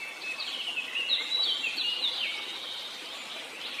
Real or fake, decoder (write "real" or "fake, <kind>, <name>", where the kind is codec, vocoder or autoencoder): real